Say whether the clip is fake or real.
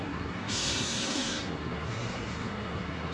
fake